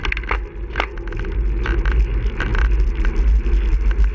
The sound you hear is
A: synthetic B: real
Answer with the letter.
B